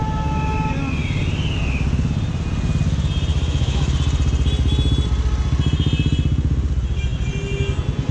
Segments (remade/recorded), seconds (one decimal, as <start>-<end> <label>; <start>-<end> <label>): 0.0-3.3 recorded; 3.3-3.9 remade; 3.9-8.1 recorded